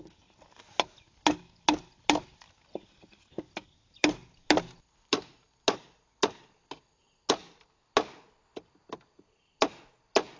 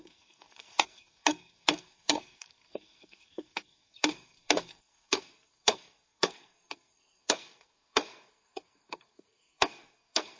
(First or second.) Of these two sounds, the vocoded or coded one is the second